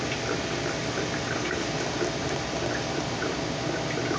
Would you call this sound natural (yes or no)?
yes